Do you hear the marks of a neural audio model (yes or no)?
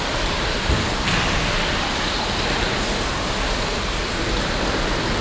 no